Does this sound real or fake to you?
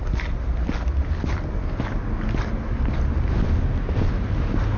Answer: real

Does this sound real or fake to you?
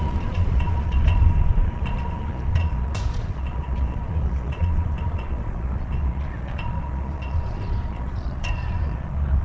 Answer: fake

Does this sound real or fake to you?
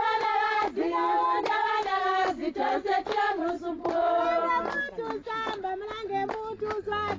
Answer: real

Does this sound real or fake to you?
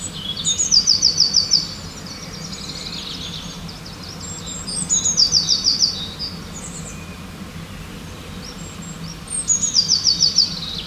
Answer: real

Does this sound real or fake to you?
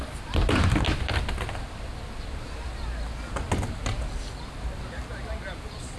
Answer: real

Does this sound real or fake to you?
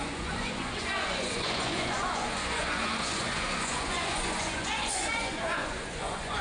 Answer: fake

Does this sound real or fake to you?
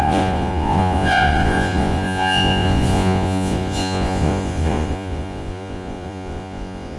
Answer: fake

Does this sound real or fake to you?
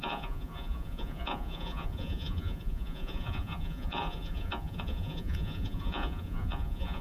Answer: fake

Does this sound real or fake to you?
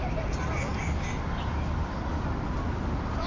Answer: real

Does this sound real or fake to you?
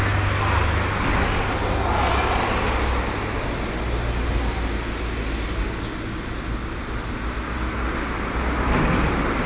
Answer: real